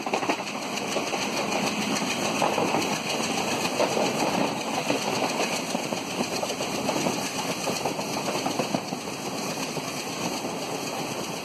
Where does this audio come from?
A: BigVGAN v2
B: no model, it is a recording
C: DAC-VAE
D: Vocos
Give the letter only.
B